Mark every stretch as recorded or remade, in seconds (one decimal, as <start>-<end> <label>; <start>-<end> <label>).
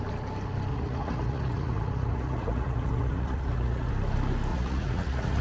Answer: 0.0-0.7 recorded; 0.7-3.9 remade; 3.9-4.5 recorded; 4.5-5.4 remade